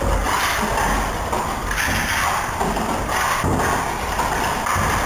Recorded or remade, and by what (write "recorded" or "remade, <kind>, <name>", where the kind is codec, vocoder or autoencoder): recorded